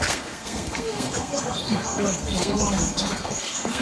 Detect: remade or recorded remade